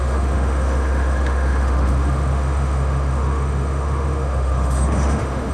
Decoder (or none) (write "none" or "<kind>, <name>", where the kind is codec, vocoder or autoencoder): autoencoder, DAC-VAE